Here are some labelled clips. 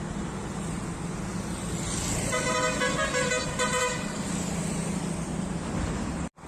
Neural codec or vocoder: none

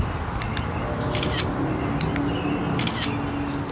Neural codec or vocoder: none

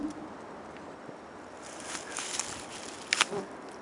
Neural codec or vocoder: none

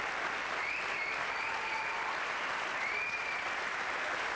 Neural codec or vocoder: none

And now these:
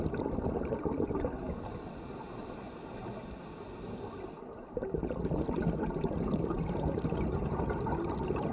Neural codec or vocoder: none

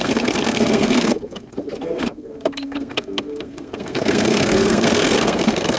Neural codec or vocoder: codec, SNAC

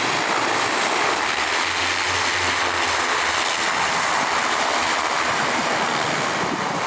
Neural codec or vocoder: none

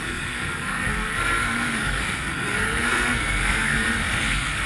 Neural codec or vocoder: codec, SNAC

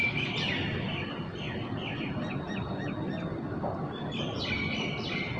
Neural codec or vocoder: none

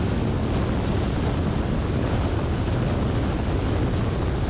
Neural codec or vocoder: none